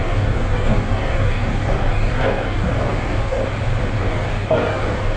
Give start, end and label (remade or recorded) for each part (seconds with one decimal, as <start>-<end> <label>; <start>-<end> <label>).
0.0-3.4 remade; 3.4-4.0 recorded; 4.0-5.2 remade